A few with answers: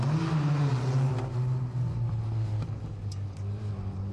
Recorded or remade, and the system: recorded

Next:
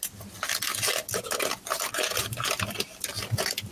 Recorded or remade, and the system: recorded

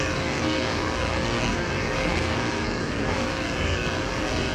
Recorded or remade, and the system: remade, codec, SNAC